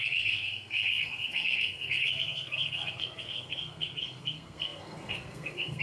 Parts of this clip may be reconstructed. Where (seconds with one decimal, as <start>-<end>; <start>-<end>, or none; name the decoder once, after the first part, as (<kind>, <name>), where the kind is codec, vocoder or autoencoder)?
0.0-5.8 (codec, SNAC)

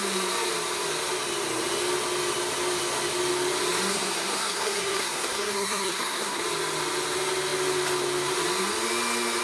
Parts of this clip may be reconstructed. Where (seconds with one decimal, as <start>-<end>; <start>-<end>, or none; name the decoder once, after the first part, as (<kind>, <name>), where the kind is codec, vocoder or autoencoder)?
3.9-6.4 (codec, SNAC)

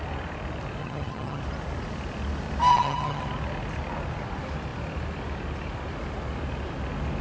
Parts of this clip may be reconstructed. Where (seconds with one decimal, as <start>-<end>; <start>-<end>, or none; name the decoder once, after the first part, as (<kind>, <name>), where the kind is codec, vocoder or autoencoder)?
0.8-1.4 (vocoder, HiFi-GAN); 2.7-3.2

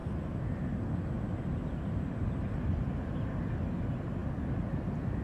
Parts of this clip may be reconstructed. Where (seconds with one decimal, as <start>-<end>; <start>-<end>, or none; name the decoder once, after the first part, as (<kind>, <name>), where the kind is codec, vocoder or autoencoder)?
none

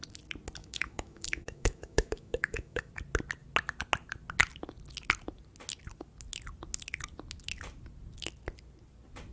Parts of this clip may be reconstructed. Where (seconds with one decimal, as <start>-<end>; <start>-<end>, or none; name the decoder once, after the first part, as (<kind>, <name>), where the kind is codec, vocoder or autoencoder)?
0.6-2.9 (autoencoder, DAC-VAE)

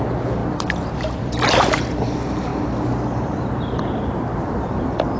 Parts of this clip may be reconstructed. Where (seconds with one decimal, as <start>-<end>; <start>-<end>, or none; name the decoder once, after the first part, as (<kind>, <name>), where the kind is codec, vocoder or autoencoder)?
0.4-2.0 (vocoder, BigVGAN v2); 2.5-3.3; 4.3-5.2